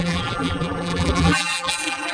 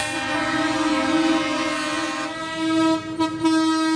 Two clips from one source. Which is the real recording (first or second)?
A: second